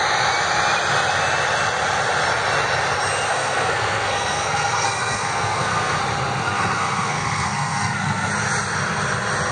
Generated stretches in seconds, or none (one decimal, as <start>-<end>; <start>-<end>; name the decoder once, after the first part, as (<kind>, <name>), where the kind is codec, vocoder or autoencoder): 3.3-6.0 (codec, SNAC); 6.4-8.3